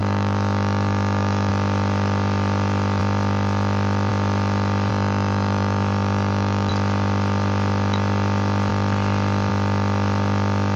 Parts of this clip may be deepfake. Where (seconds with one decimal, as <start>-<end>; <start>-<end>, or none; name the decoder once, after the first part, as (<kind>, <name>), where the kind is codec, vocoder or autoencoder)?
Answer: 0.0-1.5 (autoencoder, DAC-VAE); 4.9-6.7